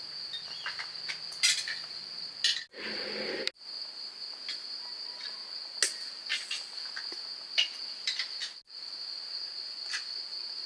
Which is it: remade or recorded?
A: recorded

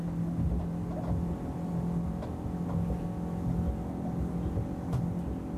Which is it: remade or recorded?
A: recorded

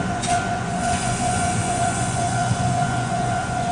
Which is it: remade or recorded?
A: remade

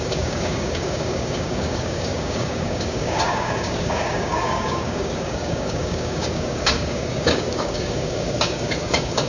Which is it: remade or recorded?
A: remade